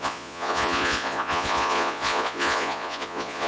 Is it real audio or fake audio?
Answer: fake